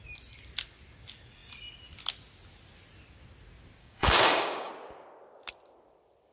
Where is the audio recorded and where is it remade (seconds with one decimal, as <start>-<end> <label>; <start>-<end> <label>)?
0.0-3.8 recorded; 3.8-4.7 remade; 4.7-6.3 recorded